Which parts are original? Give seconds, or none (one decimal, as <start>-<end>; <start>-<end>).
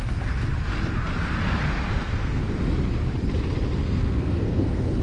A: 0.0-1.9; 2.4-3.8